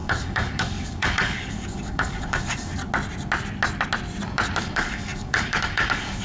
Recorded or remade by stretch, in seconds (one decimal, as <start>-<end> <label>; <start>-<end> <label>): 0.0-2.8 remade; 2.8-4.6 recorded; 4.6-6.2 remade